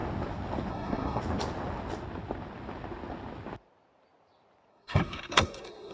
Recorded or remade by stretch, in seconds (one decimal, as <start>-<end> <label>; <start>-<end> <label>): 0.0-0.7 recorded; 0.7-1.2 remade; 1.2-4.7 recorded; 4.7-5.9 remade